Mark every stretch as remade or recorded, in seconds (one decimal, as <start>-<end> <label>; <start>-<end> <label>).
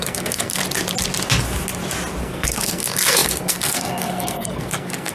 0.0-0.6 remade; 0.6-2.2 recorded; 2.2-5.1 remade